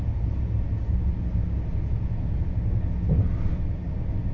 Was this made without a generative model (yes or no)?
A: yes